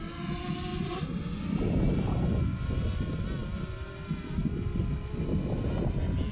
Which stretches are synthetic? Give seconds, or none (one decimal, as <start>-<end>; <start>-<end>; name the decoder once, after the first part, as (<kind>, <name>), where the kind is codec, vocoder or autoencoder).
none